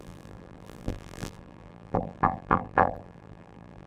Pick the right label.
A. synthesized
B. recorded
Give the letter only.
A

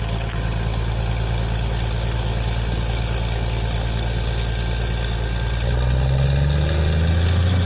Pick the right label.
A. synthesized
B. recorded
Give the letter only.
B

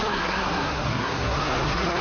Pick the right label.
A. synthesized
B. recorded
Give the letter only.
A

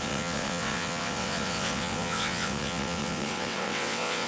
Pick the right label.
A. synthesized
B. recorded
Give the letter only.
A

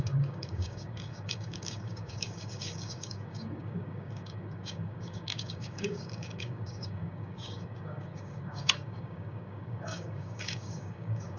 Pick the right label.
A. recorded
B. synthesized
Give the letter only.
B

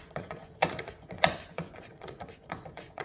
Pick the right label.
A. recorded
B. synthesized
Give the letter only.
B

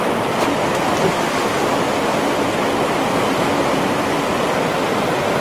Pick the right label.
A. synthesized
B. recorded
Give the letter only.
B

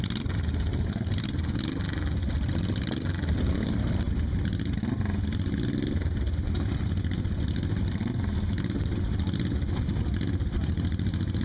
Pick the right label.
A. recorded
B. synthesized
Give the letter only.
A